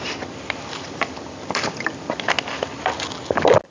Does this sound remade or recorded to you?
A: recorded